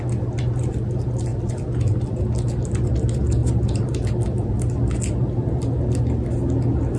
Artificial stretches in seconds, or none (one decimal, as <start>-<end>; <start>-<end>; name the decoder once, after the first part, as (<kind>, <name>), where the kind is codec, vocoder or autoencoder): none